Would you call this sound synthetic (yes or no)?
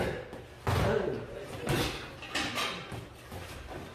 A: no